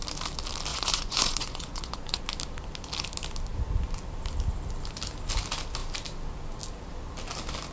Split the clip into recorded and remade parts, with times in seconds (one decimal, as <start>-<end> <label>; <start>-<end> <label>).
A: 0.0-0.7 recorded; 0.7-2.2 remade; 2.2-7.7 recorded